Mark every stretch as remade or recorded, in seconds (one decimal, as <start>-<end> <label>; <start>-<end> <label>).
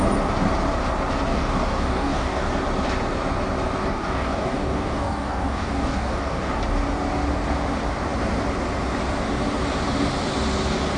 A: 0.0-1.3 recorded; 1.3-2.5 remade; 2.5-3.8 recorded; 3.8-6.6 remade; 6.6-11.0 recorded